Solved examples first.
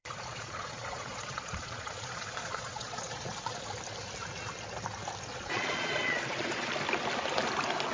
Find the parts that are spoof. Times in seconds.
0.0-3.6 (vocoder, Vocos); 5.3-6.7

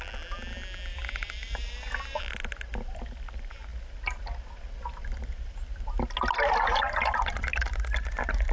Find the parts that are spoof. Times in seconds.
0.9-2.2 (vocoder, BigVGAN v2)